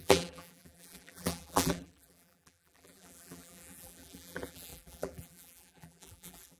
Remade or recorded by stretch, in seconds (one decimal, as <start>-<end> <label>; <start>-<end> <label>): 0.0-6.6 remade